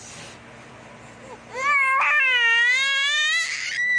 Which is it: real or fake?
real